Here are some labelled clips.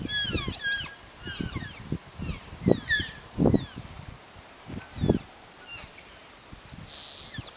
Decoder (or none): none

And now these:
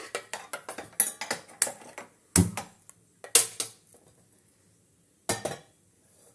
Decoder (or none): none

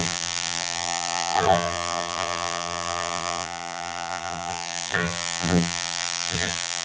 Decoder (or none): vocoder, BigVGAN v2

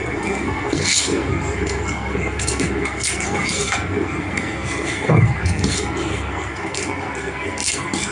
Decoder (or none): codec, SNAC